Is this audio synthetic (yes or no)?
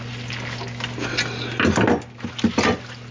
no